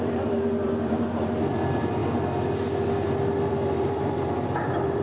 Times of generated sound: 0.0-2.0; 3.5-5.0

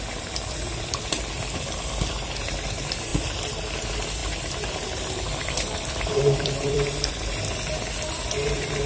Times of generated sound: 4.2-7.1